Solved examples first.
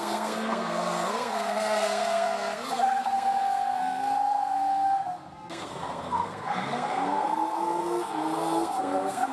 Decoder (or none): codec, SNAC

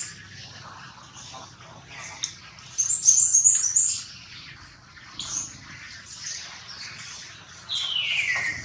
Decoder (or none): none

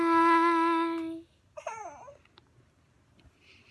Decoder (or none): none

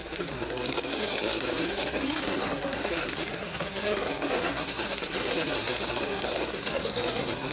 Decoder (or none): codec, SNAC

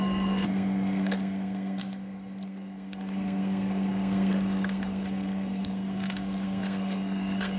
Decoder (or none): codec, SNAC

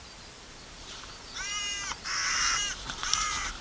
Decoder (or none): vocoder, BigVGAN v2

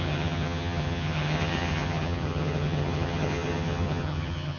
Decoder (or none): vocoder, HiFi-GAN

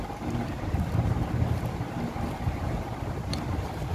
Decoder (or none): none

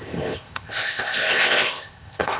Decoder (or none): codec, ZipCodec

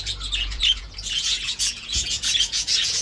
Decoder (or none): vocoder, Vocos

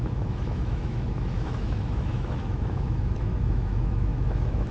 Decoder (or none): autoencoder, DAC-VAE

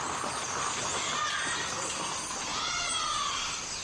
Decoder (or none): none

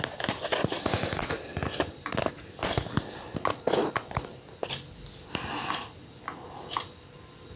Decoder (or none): none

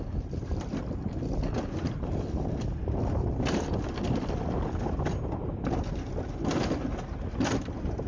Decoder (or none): none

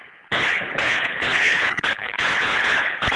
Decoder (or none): codec, HILCodec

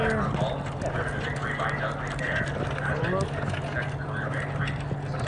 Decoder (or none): none